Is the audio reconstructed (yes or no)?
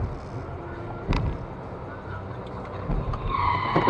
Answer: no